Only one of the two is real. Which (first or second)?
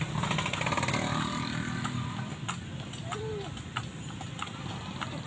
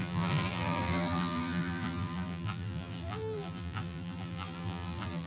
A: first